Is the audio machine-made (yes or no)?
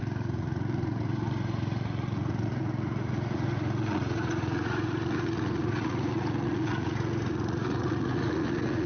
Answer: yes